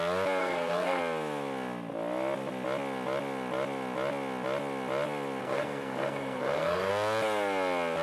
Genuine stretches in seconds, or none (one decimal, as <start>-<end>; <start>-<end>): 0.0-0.4; 1.0-5.4; 6.9-8.0